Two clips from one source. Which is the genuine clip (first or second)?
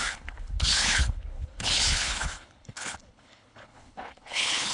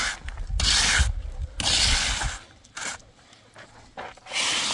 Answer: second